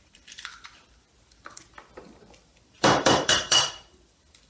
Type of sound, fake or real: fake